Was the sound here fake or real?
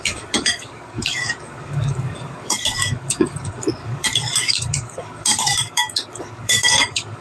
fake